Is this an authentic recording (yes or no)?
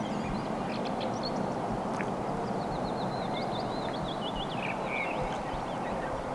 yes